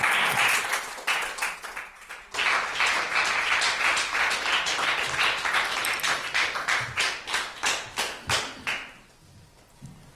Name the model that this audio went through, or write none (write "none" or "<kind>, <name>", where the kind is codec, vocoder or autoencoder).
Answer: none